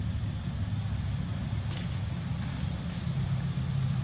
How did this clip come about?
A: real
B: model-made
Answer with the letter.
A